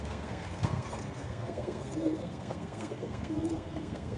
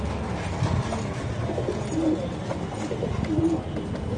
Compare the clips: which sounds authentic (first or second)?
second